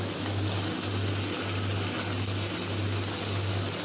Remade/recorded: recorded